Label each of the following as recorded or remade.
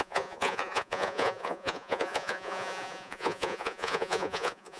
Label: remade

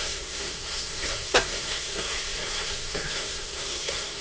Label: remade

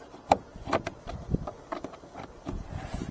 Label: recorded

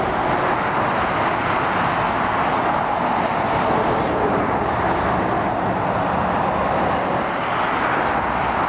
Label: recorded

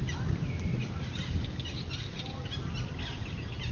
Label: recorded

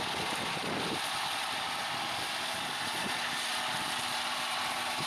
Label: recorded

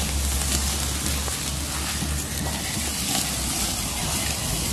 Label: recorded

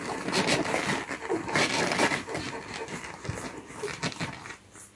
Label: recorded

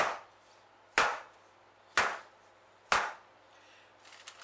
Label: recorded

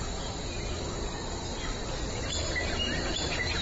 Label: recorded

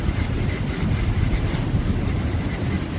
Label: recorded